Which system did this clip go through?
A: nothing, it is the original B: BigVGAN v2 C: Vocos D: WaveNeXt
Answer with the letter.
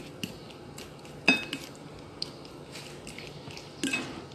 A